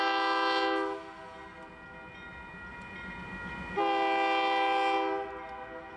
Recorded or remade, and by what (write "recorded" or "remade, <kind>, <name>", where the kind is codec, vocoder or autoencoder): recorded